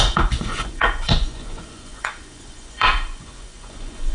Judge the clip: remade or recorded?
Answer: remade